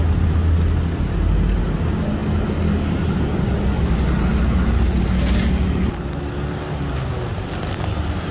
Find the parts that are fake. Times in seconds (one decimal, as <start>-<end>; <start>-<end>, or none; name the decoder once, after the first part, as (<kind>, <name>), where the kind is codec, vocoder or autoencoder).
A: none